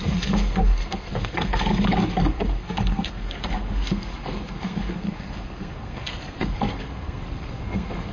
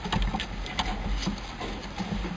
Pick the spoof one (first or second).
first